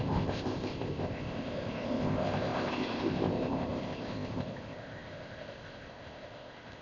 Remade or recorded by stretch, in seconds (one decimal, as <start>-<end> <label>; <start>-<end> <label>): 0.0-6.8 remade